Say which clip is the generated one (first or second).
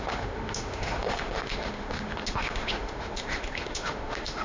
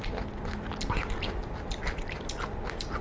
first